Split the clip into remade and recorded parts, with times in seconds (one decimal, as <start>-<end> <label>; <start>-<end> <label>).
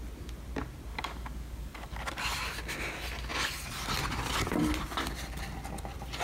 0.0-0.9 recorded; 0.9-2.1 remade; 2.1-6.2 recorded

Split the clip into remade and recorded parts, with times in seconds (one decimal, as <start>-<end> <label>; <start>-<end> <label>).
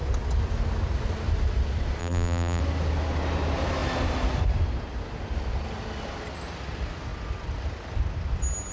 0.0-2.0 recorded; 2.0-2.6 remade; 2.6-8.7 recorded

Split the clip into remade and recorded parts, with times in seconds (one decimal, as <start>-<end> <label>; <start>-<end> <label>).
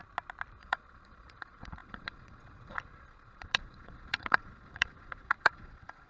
0.0-0.6 recorded; 0.6-6.1 remade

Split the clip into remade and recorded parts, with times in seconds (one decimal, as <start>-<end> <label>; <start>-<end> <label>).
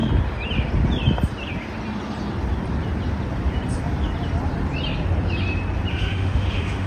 0.0-5.9 recorded; 5.9-6.9 remade